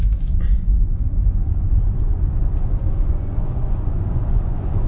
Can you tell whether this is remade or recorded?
remade